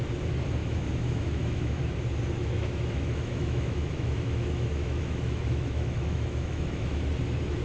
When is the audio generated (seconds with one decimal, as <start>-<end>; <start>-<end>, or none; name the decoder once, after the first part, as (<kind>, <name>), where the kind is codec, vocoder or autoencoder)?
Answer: 0.6-1.8 (autoencoder, DAC-VAE); 2.4-7.0